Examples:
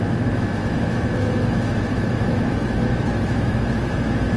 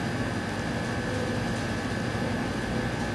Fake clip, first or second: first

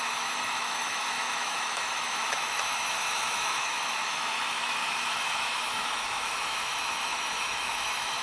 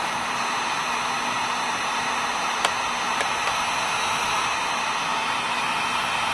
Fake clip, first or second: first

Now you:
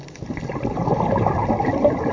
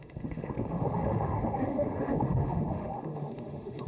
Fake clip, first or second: second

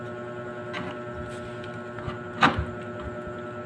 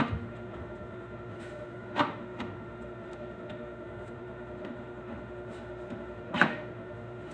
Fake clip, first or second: second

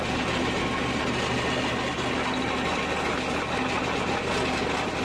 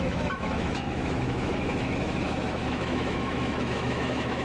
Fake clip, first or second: second